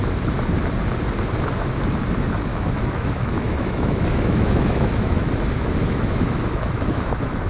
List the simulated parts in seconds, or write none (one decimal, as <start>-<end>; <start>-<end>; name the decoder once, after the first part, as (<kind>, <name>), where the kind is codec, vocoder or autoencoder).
2.5-5.3 (autoencoder, DAC-VAE); 5.8-7.5